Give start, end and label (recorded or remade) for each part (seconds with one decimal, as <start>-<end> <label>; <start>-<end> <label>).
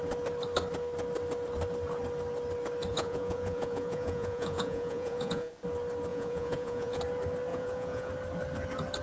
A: 0.0-2.9 recorded; 2.9-5.5 remade; 5.5-6.1 recorded; 6.1-7.0 remade; 7.0-7.5 recorded; 7.5-8.1 remade; 8.1-9.0 recorded